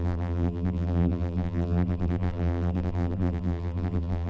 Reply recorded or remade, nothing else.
remade